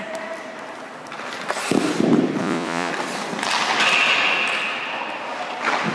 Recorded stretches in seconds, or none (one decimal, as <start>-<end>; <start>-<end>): 0.0-2.4; 2.9-5.9